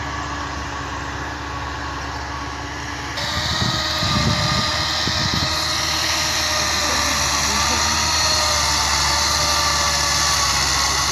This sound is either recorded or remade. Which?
recorded